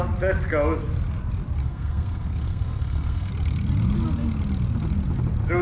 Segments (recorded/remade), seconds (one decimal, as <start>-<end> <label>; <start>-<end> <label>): 0.0-1.6 recorded; 1.6-3.3 remade; 3.3-5.6 recorded